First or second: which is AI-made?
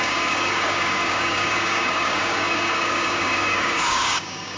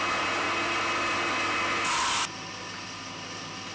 first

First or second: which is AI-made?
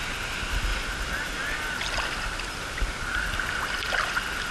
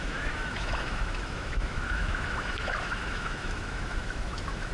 second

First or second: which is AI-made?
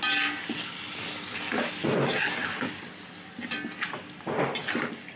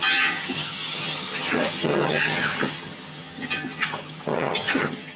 second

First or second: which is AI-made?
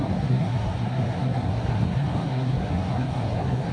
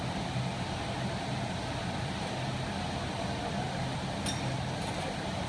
first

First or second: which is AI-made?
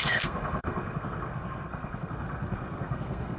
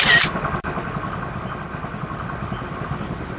first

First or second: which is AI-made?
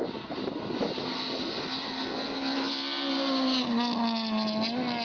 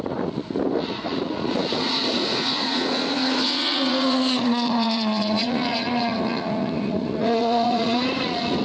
second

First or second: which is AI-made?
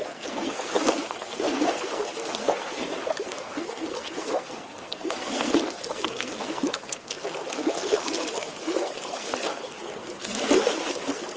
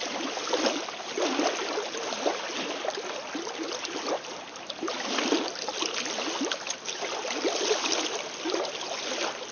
first